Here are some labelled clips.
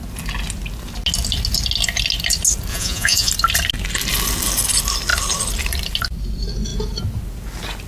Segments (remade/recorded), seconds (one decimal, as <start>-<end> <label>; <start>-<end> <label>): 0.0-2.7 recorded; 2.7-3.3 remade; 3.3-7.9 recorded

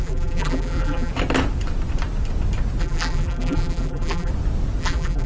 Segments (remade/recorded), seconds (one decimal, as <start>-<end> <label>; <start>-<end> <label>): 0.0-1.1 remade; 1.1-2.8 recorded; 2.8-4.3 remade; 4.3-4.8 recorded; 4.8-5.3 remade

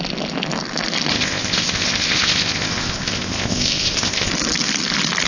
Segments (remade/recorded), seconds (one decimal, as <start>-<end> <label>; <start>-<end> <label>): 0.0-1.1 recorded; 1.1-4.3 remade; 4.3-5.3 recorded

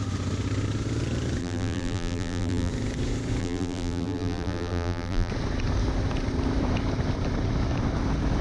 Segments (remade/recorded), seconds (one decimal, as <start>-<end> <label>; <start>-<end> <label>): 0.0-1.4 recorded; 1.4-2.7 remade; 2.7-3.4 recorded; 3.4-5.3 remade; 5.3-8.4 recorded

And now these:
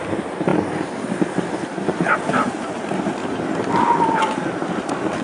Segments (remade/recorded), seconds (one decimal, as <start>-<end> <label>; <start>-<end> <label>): 0.0-3.2 recorded; 3.2-5.2 remade

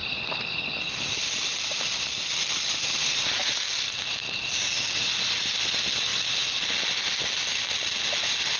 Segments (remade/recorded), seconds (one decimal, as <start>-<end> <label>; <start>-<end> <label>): 0.0-4.7 remade; 4.7-8.6 recorded